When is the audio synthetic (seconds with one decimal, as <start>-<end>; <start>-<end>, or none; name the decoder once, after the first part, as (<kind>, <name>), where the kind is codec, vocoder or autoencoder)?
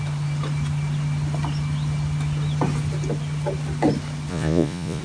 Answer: 4.3-5.0 (vocoder, Vocos)